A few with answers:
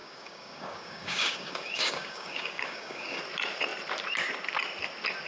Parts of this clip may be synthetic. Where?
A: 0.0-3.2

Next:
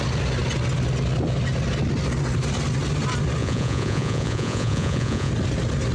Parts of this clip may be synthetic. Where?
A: 3.4-5.3